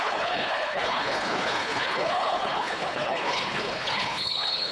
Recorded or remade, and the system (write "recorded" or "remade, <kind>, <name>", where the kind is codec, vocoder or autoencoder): remade, codec, HILCodec